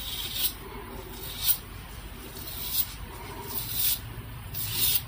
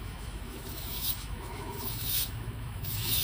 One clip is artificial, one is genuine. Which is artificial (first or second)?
second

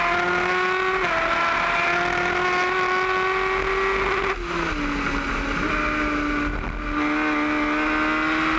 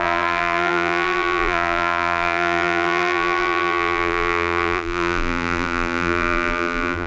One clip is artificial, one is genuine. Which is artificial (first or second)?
second